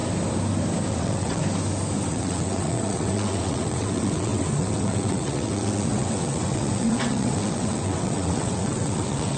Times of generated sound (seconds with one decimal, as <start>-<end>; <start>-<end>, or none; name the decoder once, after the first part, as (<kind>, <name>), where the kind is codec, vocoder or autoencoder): 0.9-1.4 (vocoder, WaveNeXt); 2.1-9.4